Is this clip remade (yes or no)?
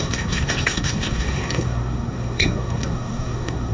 yes